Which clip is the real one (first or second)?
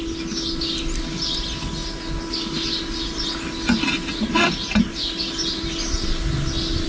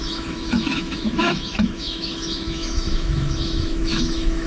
first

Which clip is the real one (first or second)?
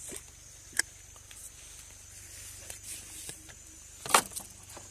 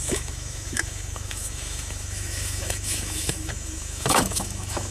first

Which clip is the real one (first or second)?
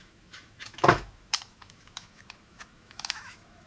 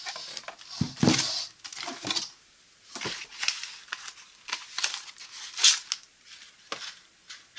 second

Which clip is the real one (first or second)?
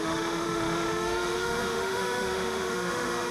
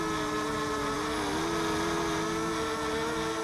second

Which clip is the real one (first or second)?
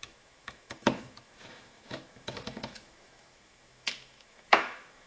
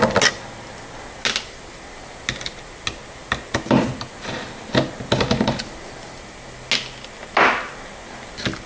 second